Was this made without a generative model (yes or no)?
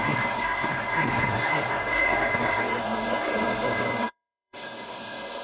no